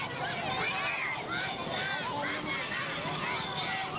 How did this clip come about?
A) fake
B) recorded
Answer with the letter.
B